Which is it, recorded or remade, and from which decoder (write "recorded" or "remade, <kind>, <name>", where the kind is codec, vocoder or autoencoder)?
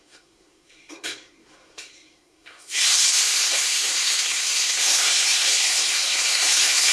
remade, codec, SNAC